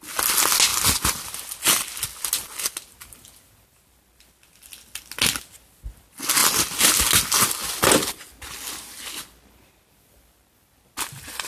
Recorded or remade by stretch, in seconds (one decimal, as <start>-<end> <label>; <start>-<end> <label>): 0.0-11.5 recorded